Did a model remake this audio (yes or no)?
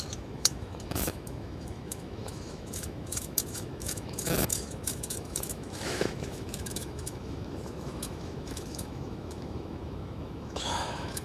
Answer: yes